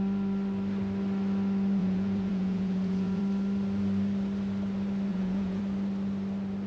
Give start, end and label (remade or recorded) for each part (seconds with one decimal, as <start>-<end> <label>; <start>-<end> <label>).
0.0-1.8 recorded; 1.8-3.2 remade; 3.2-5.1 recorded; 5.1-5.6 remade; 5.6-6.7 recorded